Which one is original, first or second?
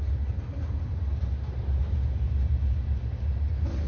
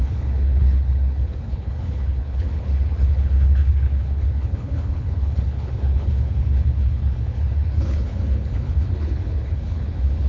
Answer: first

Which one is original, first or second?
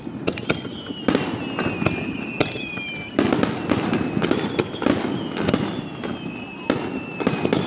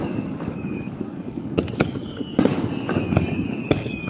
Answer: first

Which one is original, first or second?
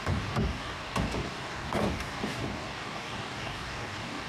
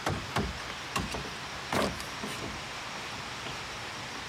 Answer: second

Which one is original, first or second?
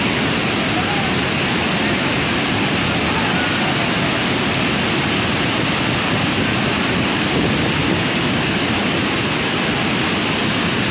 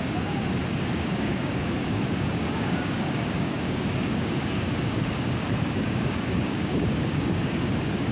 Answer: first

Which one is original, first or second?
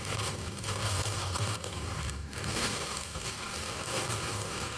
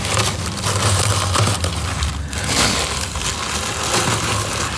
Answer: second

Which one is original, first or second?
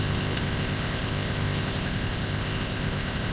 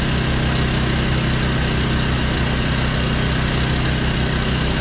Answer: second